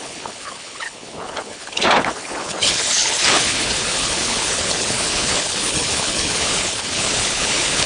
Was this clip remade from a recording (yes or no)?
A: yes